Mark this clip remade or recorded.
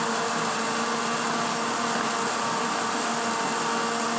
recorded